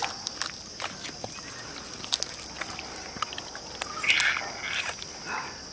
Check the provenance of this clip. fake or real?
real